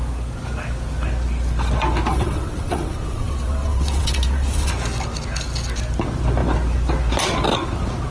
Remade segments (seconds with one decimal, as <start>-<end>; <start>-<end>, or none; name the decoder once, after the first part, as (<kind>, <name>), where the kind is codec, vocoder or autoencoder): 2.1-4.7 (vocoder, WaveNeXt)